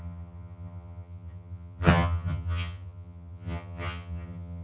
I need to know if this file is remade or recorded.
remade